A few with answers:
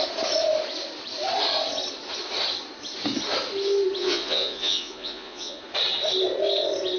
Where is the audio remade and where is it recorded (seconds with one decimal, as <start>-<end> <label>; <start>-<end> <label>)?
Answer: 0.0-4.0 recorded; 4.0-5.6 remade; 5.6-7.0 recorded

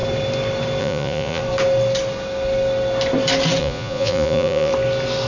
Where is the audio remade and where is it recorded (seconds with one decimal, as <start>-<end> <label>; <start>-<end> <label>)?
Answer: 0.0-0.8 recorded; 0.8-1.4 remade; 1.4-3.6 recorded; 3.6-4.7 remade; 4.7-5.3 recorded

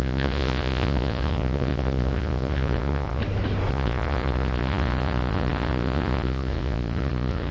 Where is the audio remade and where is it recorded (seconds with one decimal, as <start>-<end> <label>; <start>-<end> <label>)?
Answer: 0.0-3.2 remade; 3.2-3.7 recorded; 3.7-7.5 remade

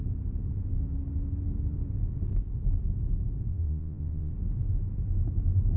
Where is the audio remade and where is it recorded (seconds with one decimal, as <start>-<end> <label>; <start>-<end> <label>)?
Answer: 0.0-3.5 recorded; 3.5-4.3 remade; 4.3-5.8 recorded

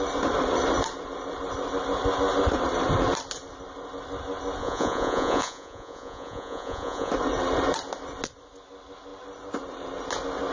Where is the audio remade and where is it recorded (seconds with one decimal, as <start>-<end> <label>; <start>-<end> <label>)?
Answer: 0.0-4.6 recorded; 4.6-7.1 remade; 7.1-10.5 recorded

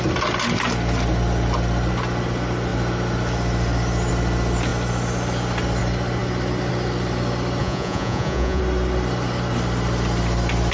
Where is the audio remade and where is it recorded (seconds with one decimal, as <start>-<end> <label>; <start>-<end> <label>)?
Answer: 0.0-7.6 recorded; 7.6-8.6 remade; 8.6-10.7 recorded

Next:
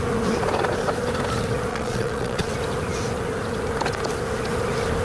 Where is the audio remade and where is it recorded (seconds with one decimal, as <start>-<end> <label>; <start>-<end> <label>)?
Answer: 0.0-1.7 recorded; 1.7-2.5 remade; 2.5-5.0 recorded